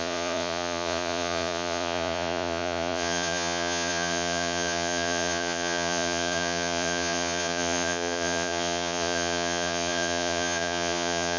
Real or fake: fake